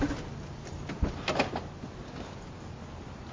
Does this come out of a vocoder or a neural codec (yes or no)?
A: no